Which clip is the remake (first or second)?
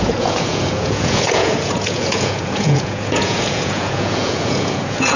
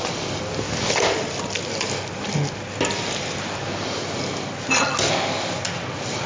first